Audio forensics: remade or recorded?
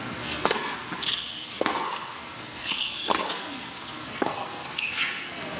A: remade